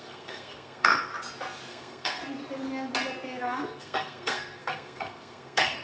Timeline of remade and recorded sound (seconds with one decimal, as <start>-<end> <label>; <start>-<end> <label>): 0.0-1.1 remade; 1.1-1.7 recorded; 1.7-2.2 remade; 2.2-3.4 recorded; 3.4-5.8 remade